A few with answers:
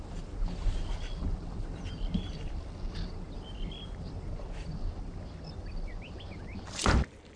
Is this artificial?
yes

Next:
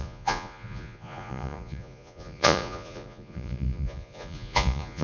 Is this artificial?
yes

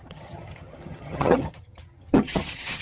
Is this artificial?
yes